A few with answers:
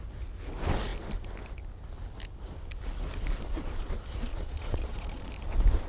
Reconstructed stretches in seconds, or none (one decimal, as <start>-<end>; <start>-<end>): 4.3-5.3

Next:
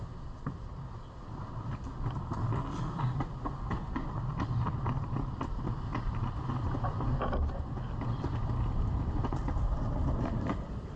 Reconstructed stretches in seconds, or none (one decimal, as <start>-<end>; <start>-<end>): 5.9-6.7

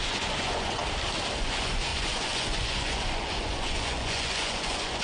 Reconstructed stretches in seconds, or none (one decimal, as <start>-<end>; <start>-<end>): 0.0-0.8; 1.4-5.0

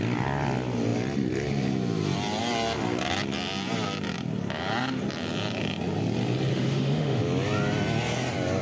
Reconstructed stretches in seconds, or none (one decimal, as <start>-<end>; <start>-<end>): 6.5-7.2